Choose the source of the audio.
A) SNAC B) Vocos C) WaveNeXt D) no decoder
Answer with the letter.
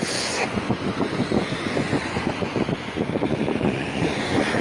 B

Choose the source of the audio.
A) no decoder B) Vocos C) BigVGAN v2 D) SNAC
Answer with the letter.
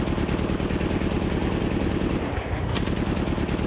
A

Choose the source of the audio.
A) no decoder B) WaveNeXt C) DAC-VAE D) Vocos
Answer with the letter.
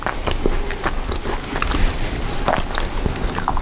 A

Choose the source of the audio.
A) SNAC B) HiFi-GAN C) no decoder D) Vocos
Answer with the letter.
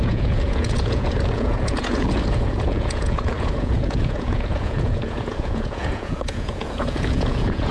D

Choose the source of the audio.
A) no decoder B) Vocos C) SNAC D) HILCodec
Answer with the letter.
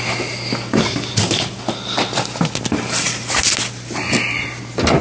A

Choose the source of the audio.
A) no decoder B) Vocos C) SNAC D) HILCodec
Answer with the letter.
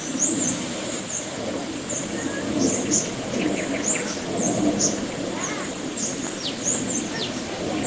A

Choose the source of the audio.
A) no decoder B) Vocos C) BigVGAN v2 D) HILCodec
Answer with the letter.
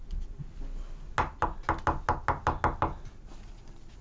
A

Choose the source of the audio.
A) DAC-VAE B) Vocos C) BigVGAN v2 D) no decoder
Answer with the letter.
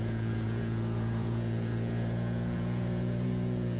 B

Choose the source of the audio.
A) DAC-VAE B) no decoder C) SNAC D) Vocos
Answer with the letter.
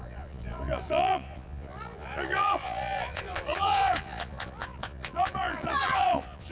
D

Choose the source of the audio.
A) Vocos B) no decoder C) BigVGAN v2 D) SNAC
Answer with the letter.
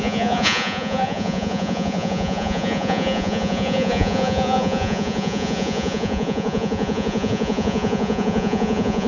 A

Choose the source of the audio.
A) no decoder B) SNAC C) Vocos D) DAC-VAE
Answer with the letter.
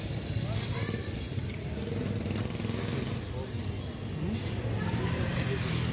A